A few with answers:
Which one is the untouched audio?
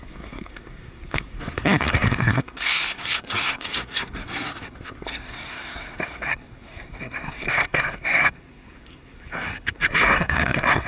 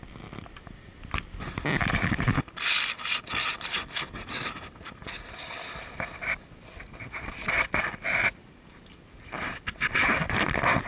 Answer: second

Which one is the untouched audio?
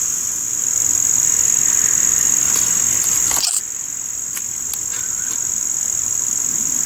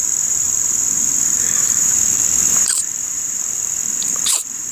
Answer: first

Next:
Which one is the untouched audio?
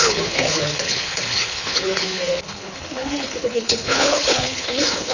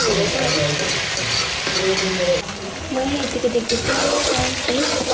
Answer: second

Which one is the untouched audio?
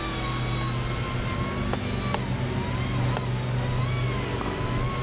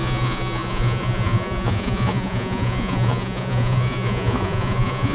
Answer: first